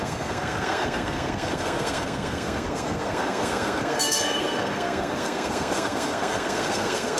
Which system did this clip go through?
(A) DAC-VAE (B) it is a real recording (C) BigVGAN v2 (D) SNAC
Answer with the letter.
D